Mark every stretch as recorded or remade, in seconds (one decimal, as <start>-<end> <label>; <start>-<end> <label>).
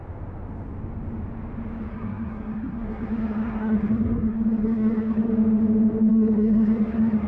0.0-1.9 recorded; 1.9-5.3 remade; 5.3-6.1 recorded; 6.1-7.3 remade